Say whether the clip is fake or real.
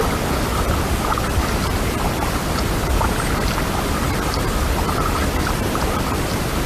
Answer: real